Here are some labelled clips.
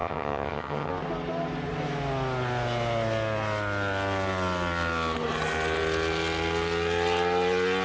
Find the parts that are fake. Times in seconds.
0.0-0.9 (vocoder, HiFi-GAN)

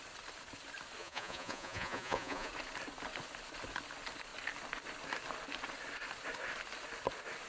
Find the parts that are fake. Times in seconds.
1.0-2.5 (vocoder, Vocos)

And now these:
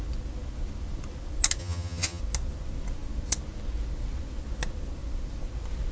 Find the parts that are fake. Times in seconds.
1.6-2.2 (vocoder, HiFi-GAN)